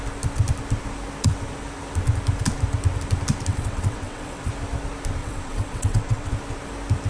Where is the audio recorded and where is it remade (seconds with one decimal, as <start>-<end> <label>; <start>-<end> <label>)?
0.0-3.5 recorded; 3.5-4.5 remade; 4.5-5.2 recorded; 5.2-6.3 remade; 6.3-7.1 recorded

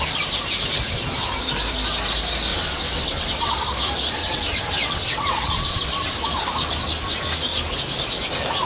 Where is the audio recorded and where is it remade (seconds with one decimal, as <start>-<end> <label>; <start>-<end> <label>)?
0.0-2.5 recorded; 2.5-3.5 remade; 3.5-4.2 recorded; 4.2-6.1 remade; 6.1-8.7 recorded

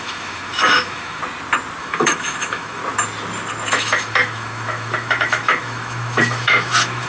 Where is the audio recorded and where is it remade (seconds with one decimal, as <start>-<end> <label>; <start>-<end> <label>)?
0.0-1.2 remade; 1.2-1.8 recorded; 1.8-2.8 remade; 2.8-3.7 recorded; 3.7-7.1 remade

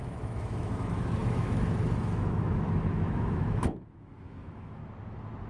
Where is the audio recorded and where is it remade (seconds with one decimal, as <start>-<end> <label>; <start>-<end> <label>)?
0.0-4.8 remade; 4.8-5.5 recorded